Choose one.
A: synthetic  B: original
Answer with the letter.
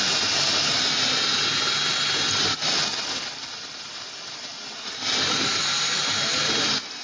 B